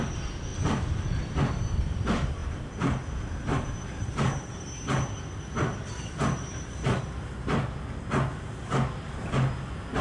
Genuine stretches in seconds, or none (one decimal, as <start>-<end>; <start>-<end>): 0.0-10.0